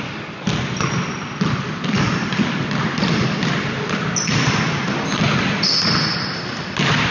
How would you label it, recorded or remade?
recorded